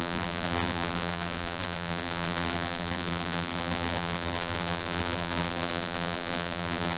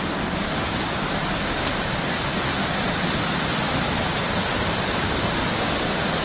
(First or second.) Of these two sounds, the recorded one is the second